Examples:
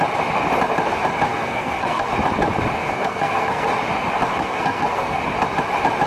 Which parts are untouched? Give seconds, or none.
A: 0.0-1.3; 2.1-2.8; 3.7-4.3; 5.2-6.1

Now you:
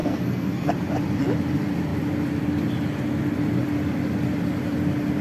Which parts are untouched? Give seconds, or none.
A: 0.7-5.2

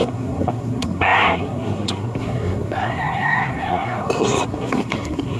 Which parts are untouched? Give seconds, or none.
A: none